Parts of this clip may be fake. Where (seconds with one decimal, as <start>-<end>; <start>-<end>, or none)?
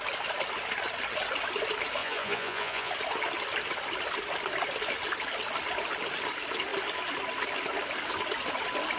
2.0-2.9